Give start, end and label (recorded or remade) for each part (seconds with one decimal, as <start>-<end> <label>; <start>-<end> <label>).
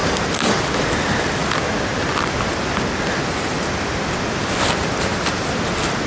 0.0-0.9 remade; 0.9-1.4 recorded; 1.4-5.1 remade; 5.1-6.1 recorded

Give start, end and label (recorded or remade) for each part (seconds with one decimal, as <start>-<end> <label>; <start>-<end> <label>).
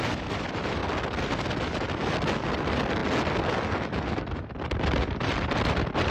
0.0-0.8 remade; 0.8-2.5 recorded; 2.5-3.0 remade; 3.0-4.2 recorded; 4.2-6.1 remade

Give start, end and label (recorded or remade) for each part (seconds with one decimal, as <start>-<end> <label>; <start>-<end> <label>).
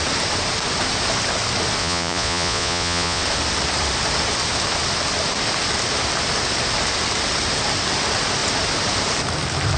0.0-1.8 recorded; 1.8-3.2 remade; 3.2-9.8 recorded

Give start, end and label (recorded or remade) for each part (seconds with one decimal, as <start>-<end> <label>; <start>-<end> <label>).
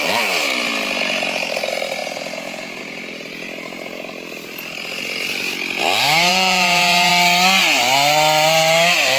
0.0-2.0 recorded; 2.0-2.8 remade; 2.8-6.3 recorded; 6.3-7.1 remade; 7.1-9.2 recorded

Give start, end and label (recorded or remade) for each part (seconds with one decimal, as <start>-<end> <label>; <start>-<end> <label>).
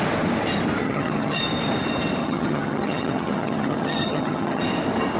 0.0-0.8 recorded; 0.8-1.4 remade; 1.4-2.2 recorded; 2.2-4.6 remade; 4.6-5.2 recorded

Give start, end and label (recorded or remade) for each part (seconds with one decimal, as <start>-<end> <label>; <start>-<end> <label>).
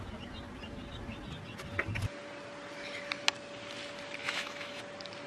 0.0-4.2 recorded; 4.2-4.8 remade; 4.8-5.3 recorded